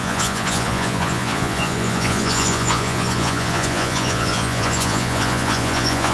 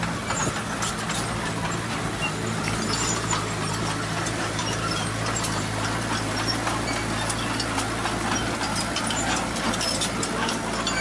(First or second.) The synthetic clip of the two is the first